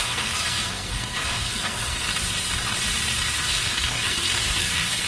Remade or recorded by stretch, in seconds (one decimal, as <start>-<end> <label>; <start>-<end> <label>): 0.0-2.1 remade; 2.1-3.4 recorded; 3.4-5.1 remade